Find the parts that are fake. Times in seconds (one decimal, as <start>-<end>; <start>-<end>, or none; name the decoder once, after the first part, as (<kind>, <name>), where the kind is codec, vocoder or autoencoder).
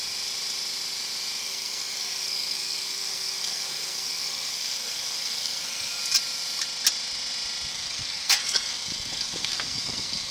1.4-6.0 (codec, SNAC); 7.7-10.3